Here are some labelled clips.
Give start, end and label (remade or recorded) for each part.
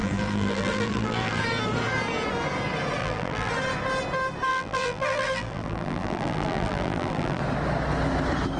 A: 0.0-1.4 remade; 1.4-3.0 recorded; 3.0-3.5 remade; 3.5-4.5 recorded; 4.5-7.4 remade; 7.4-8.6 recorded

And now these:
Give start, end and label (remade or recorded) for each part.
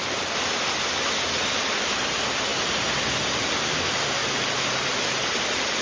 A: 0.0-4.2 recorded; 4.2-5.0 remade; 5.0-5.8 recorded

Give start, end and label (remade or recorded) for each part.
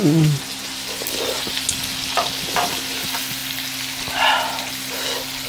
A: 0.0-5.5 recorded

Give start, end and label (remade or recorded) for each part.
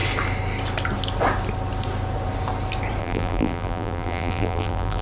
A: 0.0-3.0 recorded; 3.0-5.0 remade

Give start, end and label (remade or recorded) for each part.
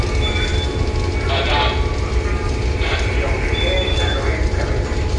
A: 0.0-2.1 recorded; 2.1-3.6 remade; 3.6-5.2 recorded